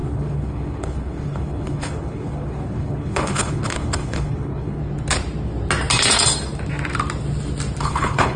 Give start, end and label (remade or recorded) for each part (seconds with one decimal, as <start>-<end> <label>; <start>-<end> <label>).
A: 0.0-4.8 remade; 4.8-7.8 recorded; 7.8-8.4 remade